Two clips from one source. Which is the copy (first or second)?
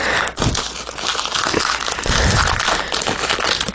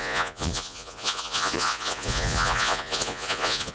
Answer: second